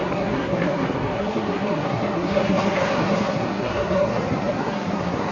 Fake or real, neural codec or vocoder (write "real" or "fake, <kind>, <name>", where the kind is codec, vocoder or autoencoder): fake, codec, SNAC